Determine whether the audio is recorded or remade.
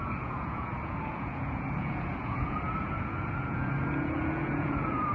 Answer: remade